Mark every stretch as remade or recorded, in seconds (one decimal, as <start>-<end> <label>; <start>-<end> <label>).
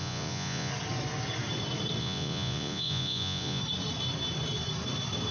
0.0-0.7 remade; 0.7-2.0 recorded; 2.0-3.6 remade; 3.6-5.3 recorded